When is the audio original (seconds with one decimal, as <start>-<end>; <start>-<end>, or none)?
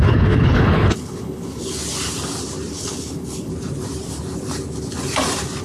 1.8-2.7; 3.5-5.6